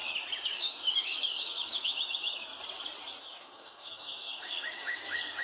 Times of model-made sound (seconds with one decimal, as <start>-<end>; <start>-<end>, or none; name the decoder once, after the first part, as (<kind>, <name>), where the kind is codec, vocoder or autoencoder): 0.5-2.5 (codec, DAC); 3.2-5.4